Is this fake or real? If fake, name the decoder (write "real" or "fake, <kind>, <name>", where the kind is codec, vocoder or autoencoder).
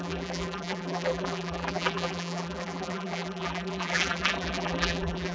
fake, vocoder, BigVGAN v2